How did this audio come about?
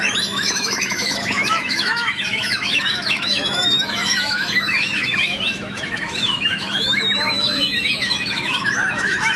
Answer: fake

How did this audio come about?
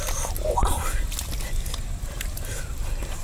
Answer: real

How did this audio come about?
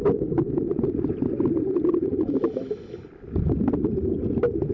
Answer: real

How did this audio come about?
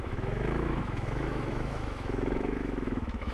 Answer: fake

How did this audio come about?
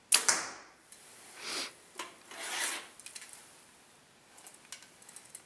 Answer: real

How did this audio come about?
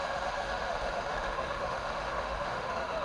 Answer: fake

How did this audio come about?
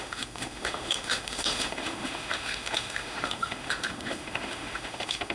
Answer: fake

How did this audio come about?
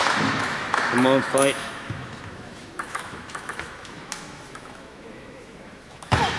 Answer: fake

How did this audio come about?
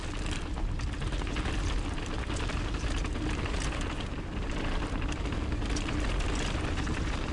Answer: real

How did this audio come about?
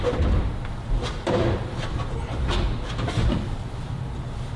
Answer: real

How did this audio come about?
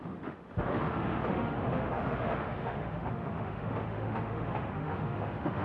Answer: fake